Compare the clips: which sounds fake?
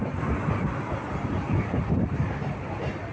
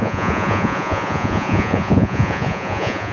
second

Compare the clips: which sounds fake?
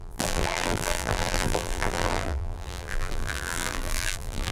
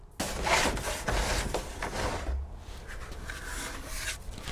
first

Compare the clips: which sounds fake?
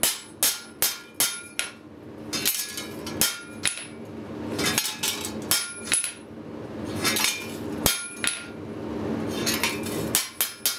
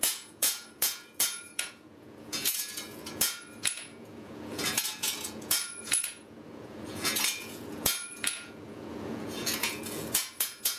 second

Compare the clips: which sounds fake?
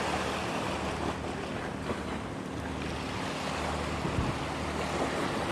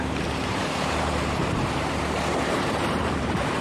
second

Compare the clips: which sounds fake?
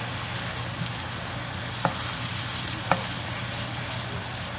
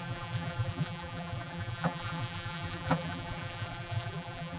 second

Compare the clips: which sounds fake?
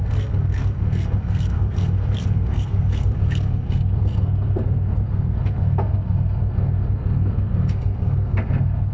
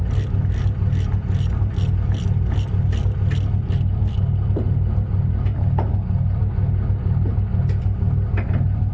first